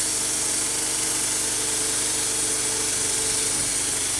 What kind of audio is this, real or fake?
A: real